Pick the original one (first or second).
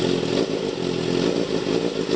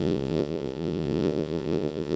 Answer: first